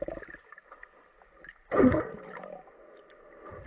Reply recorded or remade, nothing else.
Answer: recorded